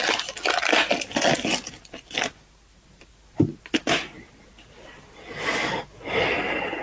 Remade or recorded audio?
recorded